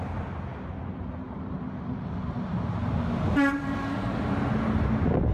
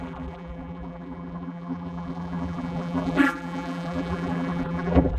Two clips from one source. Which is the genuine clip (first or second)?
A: first